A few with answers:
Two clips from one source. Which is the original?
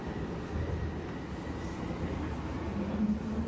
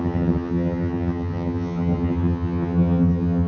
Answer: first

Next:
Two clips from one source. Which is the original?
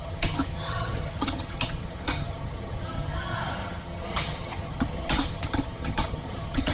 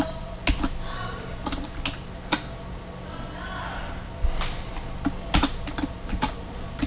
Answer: second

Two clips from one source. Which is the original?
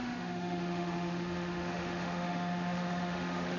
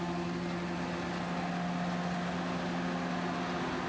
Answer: second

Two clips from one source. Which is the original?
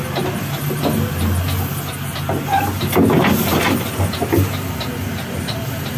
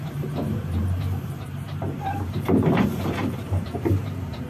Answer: first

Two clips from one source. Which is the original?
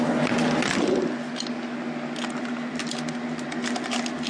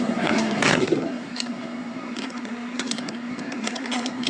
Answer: first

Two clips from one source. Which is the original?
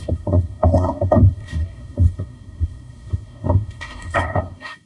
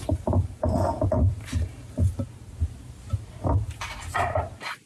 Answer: second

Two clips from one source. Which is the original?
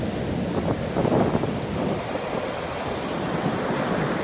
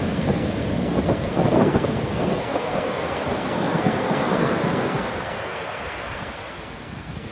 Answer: first